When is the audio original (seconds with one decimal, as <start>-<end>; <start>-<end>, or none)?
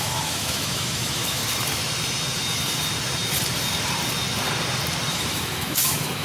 1.4-5.1